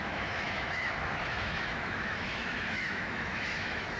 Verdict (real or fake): fake